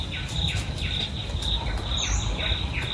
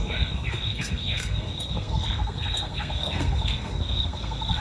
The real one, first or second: first